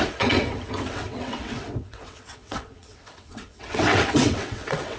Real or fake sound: fake